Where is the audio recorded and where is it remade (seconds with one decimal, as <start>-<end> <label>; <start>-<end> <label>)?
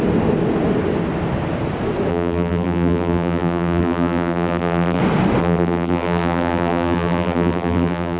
0.0-2.1 recorded; 2.1-5.0 remade; 5.0-5.4 recorded; 5.4-8.2 remade